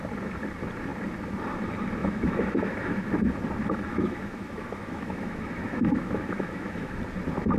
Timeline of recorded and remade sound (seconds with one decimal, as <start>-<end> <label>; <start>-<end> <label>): 0.0-2.0 recorded; 2.0-3.1 remade; 3.1-3.9 recorded; 3.9-7.0 remade; 7.0-7.6 recorded